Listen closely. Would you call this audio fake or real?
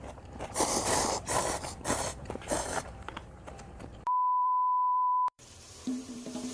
fake